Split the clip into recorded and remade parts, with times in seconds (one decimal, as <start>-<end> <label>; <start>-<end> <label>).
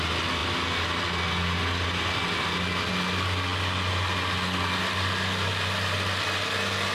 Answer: 0.0-6.9 recorded